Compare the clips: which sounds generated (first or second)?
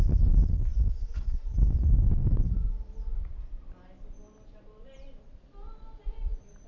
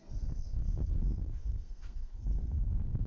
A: second